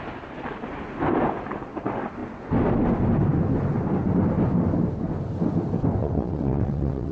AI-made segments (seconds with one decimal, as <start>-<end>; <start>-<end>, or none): 6.0-7.1